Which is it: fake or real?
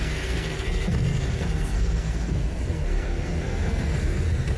fake